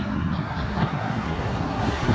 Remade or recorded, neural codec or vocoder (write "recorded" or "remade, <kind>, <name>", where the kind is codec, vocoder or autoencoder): remade, codec, SNAC